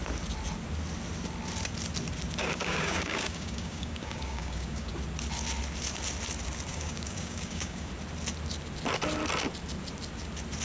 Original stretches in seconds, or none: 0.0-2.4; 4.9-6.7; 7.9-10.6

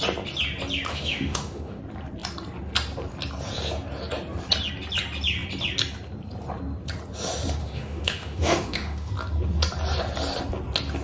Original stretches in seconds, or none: 0.0-0.9; 1.8-7.6; 9.1-11.0

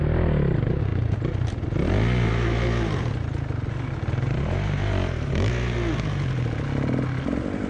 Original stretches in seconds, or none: 0.0-7.7

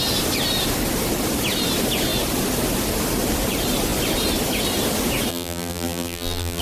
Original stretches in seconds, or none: 0.0-5.3

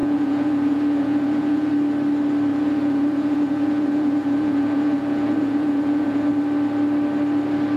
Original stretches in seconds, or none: 1.7-2.5; 6.3-7.8

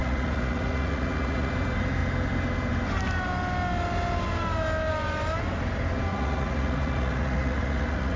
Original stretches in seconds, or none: 1.5-6.1

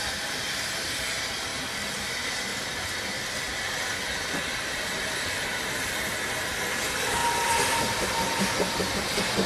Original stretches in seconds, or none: 0.0-9.5